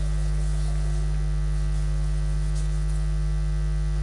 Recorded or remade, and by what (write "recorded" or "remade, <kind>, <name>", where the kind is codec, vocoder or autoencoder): recorded